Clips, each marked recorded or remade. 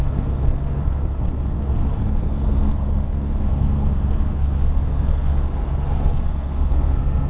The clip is remade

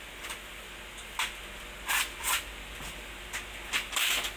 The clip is recorded